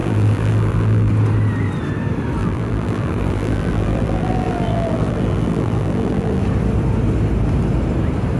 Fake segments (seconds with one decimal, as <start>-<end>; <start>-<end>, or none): 0.0-1.1; 2.4-6.4